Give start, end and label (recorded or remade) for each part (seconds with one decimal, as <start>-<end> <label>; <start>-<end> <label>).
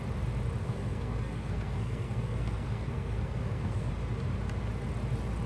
0.0-0.6 recorded; 0.6-3.9 remade; 3.9-5.5 recorded